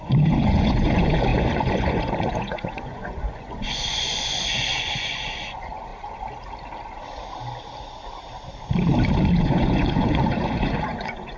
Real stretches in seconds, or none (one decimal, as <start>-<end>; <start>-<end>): 5.9-9.4

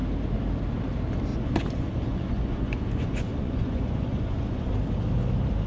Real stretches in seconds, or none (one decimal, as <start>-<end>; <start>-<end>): 0.0-1.3; 4.7-5.7

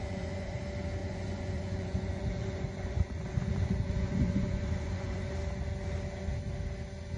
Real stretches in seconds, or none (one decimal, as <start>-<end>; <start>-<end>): 0.6-1.0; 5.3-7.2

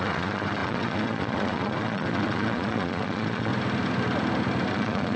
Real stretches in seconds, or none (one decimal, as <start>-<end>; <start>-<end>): 3.5-4.7

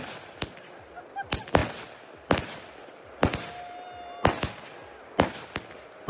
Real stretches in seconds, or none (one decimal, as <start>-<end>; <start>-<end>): 0.0-6.1

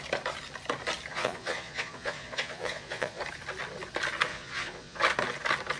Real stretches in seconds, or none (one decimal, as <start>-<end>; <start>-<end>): 0.0-1.1; 3.2-4.3; 5.0-5.8